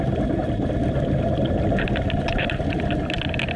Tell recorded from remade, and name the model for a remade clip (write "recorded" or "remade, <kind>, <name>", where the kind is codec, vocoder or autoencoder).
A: recorded